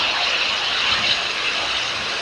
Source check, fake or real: real